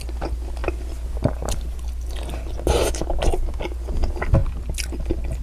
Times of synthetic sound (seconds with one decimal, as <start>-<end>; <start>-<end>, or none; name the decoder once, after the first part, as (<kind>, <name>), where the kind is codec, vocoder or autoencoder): none